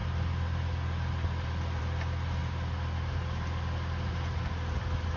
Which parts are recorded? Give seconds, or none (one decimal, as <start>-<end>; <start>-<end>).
0.0-5.2